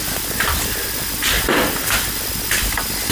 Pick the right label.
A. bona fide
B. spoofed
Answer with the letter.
A